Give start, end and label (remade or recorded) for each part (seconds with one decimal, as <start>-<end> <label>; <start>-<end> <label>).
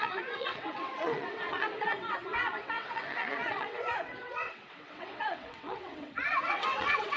0.0-7.2 remade